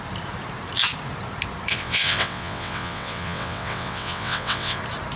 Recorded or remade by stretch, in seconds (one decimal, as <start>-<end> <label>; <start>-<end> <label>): 0.0-1.7 recorded; 1.7-4.8 remade; 4.8-5.2 recorded